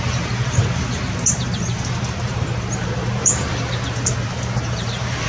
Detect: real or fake fake